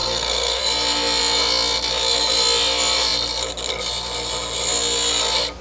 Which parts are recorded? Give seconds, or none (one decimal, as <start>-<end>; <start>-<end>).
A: 0.6-5.6